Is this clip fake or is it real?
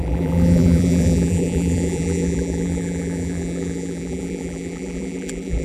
fake